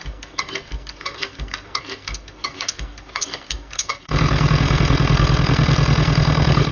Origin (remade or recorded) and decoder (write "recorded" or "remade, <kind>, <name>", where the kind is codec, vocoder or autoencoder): remade, codec, SNAC